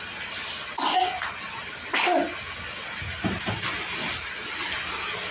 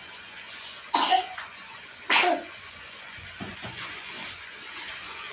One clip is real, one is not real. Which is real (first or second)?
first